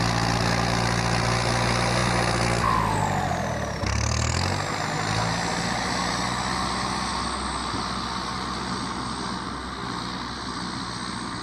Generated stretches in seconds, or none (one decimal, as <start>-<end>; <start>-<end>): none